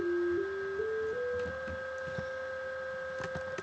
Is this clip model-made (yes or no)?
no